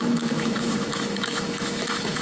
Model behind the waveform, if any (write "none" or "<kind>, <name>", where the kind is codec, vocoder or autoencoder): autoencoder, DAC-VAE